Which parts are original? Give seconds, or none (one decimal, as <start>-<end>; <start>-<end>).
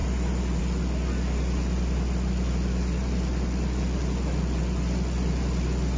0.0-6.0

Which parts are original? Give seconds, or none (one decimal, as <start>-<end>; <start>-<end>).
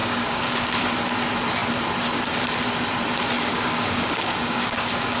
0.7-3.5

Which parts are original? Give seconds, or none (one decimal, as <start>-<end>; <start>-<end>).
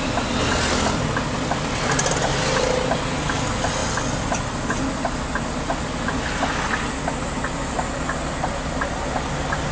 0.0-9.7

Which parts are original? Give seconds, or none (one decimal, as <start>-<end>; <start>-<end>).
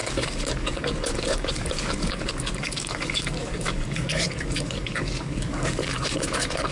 none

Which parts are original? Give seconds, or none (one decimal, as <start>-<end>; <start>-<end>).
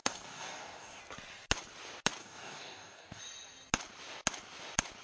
1.0-2.2; 3.2-5.0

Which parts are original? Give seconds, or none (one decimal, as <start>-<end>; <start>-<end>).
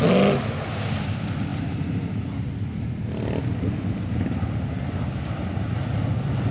0.0-6.5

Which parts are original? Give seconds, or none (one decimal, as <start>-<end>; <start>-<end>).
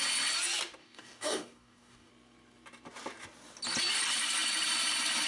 0.0-0.8; 2.1-5.3